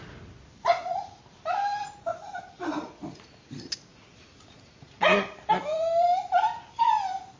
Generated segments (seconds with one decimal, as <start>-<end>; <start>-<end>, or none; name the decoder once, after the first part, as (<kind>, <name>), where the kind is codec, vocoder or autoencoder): 0.6-1.2 (vocoder, Vocos); 2.1-3.2; 3.9-5.2